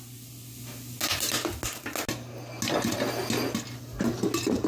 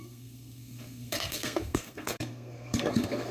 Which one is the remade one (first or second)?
second